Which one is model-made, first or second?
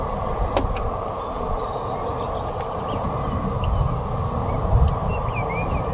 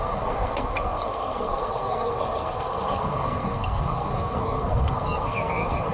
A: second